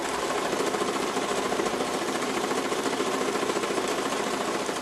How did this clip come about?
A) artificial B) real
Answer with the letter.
A